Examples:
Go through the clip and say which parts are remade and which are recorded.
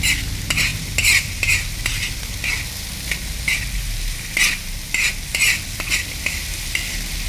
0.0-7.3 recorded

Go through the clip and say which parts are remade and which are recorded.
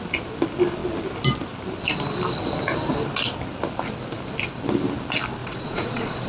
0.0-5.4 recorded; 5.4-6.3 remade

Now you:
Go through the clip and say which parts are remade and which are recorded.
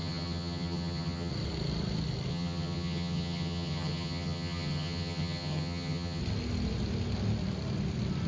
0.0-1.3 remade; 1.3-2.3 recorded; 2.3-6.2 remade; 6.2-8.3 recorded